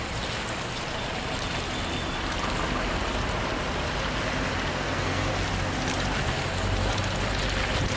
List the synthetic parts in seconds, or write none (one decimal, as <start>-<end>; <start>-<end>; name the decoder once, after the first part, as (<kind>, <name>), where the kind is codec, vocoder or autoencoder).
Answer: 4.7-5.3 (codec, SNAC)